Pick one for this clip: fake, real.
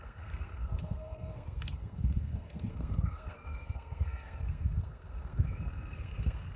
fake